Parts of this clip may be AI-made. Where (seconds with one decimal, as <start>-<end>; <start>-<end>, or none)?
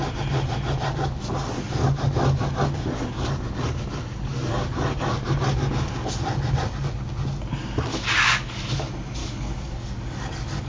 7.9-8.6; 9.2-10.7